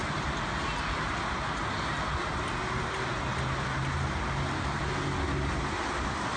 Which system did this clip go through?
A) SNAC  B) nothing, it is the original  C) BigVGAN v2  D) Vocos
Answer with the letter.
B